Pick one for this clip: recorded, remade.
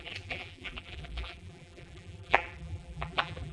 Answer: remade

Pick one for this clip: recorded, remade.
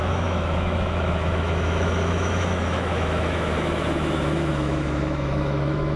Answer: remade